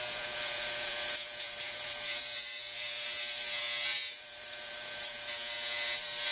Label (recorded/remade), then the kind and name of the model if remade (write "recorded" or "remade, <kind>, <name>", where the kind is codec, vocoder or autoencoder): remade, vocoder, Vocos